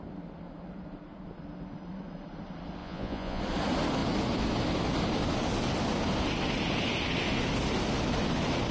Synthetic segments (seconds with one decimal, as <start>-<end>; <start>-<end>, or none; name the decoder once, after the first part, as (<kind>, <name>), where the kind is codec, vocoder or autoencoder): 2.8-3.4 (vocoder, Vocos)